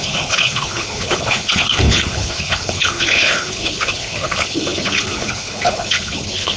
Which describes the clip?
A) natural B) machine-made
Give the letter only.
B